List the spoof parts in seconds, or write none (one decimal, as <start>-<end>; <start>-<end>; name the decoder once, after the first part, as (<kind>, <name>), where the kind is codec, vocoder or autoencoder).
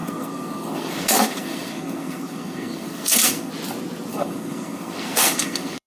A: 0.0-3.5 (codec, SNAC); 4.1-5.9